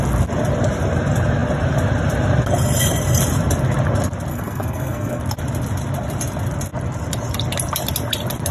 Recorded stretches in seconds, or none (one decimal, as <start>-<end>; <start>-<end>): 0.0-4.3; 5.2-8.5